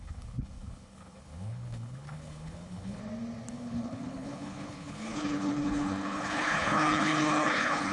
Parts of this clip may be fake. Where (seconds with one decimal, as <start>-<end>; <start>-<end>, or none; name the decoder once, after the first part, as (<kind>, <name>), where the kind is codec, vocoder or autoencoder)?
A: 0.0-3.0 (codec, HILCodec); 3.5-7.9